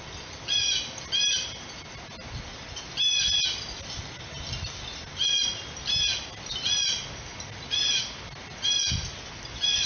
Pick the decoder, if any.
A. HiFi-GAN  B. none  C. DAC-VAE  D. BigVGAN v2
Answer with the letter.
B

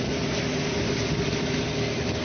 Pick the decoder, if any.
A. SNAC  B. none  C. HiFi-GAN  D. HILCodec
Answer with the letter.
B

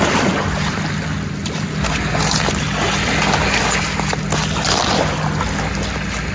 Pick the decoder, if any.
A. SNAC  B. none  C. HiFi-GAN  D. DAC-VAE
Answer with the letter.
B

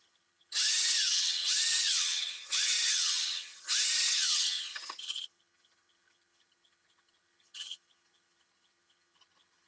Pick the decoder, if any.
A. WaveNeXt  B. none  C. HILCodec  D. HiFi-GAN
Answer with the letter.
D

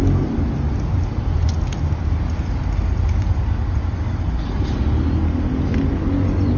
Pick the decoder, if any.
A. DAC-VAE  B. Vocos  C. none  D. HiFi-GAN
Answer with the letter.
C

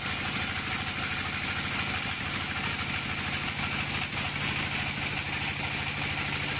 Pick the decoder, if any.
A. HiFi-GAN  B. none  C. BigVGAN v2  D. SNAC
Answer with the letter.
B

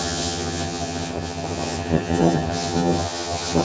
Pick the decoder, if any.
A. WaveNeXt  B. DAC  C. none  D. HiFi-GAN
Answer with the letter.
D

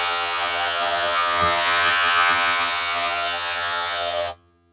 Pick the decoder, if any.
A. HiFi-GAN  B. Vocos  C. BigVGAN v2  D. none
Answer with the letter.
A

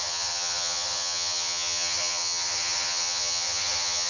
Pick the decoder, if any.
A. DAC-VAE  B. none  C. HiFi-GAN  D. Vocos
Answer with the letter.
C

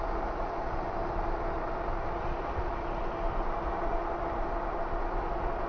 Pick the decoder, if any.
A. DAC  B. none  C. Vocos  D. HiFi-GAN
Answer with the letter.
B